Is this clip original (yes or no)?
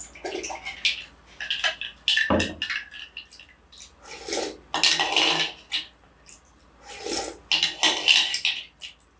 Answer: yes